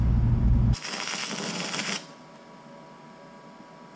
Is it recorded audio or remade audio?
recorded